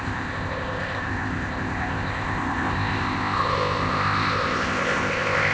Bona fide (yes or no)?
no